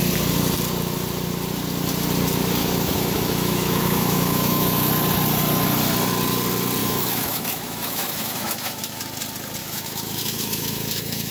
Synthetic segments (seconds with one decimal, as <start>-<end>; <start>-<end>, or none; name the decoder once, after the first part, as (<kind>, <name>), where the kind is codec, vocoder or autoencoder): 2.6-4.9 (autoencoder, DAC-VAE); 6.8-9.0; 9.6-11.3